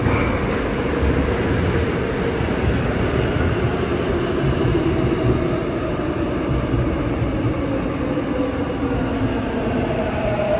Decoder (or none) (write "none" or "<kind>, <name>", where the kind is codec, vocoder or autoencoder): none